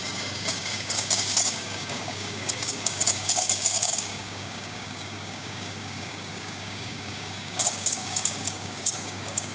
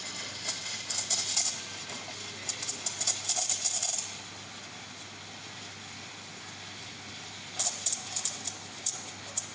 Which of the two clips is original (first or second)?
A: second